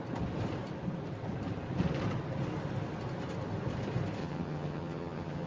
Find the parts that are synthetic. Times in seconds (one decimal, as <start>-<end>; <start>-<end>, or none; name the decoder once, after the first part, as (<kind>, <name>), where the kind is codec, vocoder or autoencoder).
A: 4.2-5.5 (vocoder, HiFi-GAN)